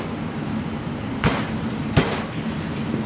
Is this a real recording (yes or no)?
yes